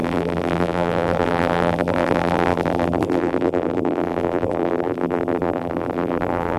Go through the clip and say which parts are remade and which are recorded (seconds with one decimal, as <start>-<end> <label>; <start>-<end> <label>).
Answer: 0.0-6.6 remade